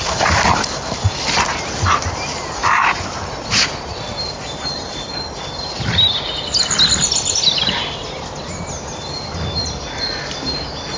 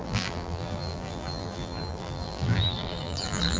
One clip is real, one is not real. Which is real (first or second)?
first